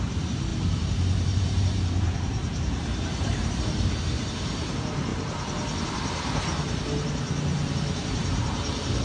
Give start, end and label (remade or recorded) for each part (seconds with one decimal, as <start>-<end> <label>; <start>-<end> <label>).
0.0-5.1 remade; 5.1-5.8 recorded; 5.8-6.5 remade; 6.5-8.1 recorded; 8.1-9.0 remade